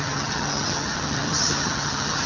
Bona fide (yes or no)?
no